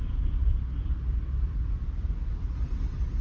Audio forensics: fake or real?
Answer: real